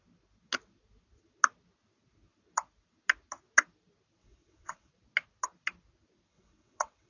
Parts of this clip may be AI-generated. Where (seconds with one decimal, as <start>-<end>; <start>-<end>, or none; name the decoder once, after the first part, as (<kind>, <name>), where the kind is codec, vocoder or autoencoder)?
4.2-4.9 (vocoder, WaveNeXt); 6.3-7.1

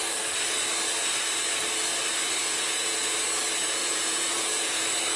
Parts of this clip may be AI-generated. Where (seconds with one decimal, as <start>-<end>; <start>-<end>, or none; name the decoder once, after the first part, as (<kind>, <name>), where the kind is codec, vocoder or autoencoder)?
2.4-3.0 (vocoder, Vocos); 3.8-4.8

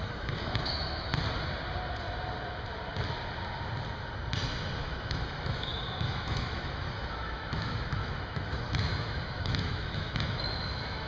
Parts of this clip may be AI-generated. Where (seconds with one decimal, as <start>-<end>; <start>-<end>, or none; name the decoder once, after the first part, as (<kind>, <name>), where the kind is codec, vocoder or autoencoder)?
0.0-1.1 (autoencoder, DAC-VAE); 4.8-11.1